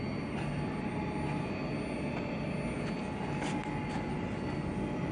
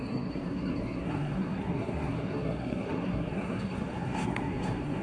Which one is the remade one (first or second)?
second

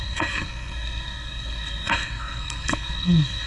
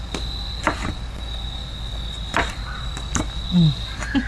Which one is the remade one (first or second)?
first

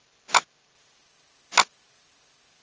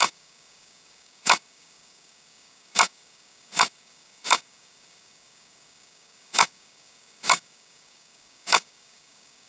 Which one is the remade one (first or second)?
second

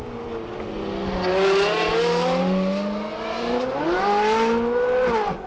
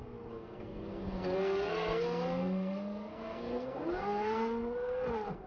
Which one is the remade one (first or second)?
second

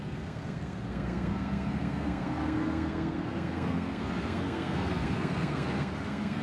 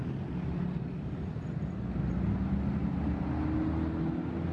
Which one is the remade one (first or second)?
first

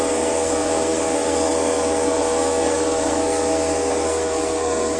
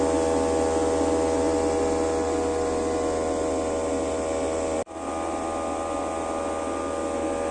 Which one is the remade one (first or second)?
first